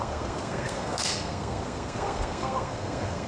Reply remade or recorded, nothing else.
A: remade